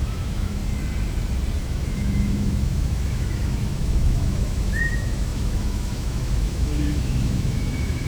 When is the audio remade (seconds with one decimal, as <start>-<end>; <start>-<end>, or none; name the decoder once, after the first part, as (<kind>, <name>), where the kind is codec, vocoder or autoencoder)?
0.0-0.6 (autoencoder, DAC-VAE); 1.6-8.1